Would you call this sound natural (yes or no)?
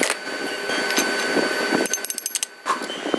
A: yes